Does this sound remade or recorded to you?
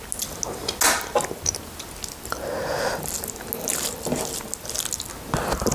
recorded